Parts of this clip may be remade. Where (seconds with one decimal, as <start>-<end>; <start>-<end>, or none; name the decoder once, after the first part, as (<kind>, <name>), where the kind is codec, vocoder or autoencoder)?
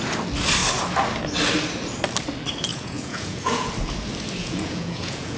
2.7-3.7 (vocoder, Vocos); 4.4-5.4